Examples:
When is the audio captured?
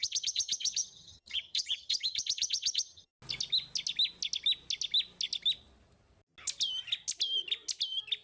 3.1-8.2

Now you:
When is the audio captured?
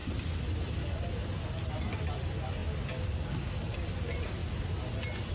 0.0-5.3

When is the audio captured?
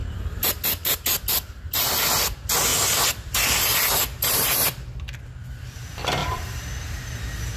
0.0-6.2; 7.1-7.6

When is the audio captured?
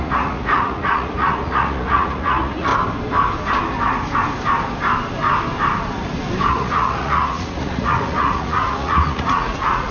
2.7-6.5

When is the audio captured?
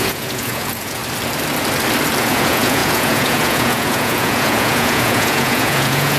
1.0-2.2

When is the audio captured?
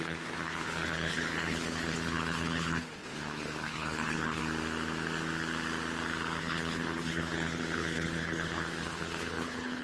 4.4-6.4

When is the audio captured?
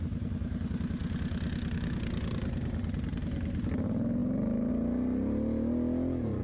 0.0-6.4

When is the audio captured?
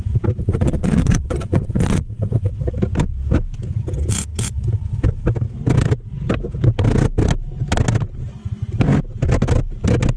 0.0-0.4; 2.5-10.2